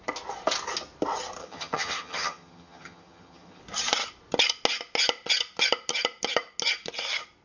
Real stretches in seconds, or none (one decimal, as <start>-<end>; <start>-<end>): 0.0-1.4; 3.6-7.4